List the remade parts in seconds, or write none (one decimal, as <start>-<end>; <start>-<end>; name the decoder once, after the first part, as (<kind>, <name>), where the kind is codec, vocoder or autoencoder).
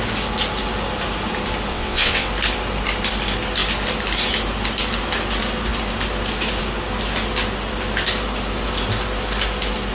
1.7-2.3 (vocoder, WaveNeXt)